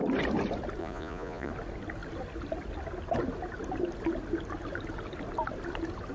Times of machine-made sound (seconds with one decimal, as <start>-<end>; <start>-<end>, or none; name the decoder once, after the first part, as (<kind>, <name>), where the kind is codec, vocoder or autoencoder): 0.8-1.5 (vocoder, Vocos)